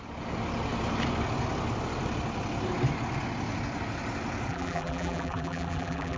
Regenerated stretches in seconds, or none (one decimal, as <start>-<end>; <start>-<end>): 4.5-6.2